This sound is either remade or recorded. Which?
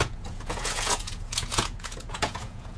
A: remade